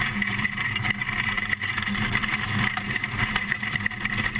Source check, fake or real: fake